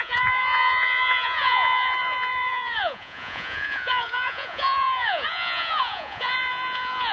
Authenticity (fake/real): fake